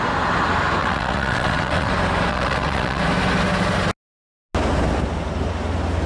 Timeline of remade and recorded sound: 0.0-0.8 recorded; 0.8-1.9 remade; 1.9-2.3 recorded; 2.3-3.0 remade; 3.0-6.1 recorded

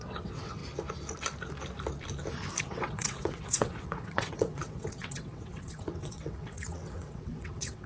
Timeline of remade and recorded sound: 0.0-0.6 remade; 0.6-2.6 recorded; 2.6-7.9 remade

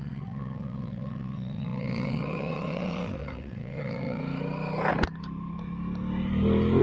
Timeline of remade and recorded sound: 0.0-4.2 remade; 4.2-6.8 recorded

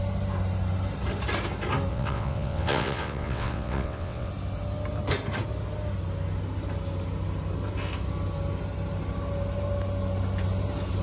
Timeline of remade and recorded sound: 0.0-1.9 recorded; 1.9-4.3 remade; 4.3-11.0 recorded